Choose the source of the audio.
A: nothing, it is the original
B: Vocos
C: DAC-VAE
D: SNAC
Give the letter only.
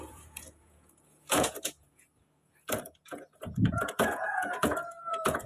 B